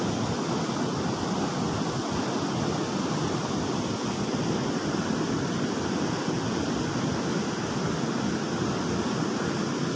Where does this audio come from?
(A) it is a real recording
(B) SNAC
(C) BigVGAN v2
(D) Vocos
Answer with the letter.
A